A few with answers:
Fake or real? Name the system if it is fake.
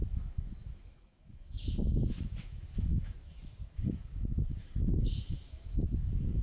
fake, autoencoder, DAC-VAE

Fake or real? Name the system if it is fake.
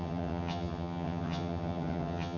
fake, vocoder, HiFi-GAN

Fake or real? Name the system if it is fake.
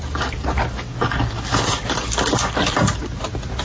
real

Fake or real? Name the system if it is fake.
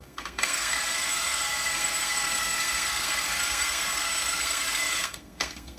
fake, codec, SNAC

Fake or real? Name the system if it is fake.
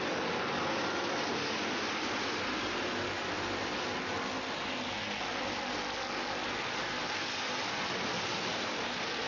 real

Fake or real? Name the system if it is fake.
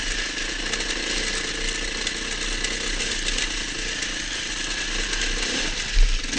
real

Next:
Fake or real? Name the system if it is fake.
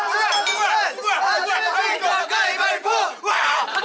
fake, vocoder, BigVGAN v2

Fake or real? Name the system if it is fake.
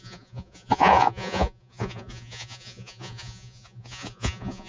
fake, vocoder, Vocos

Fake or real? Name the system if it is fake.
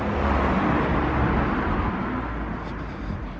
real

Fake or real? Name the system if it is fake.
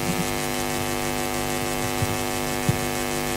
real